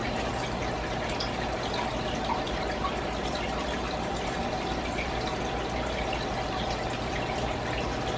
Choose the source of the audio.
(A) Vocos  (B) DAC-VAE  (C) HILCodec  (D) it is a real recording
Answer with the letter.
D